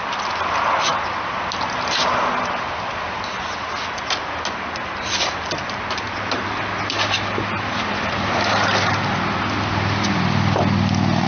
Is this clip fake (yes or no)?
no